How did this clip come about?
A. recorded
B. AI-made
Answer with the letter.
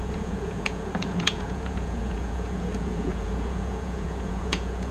B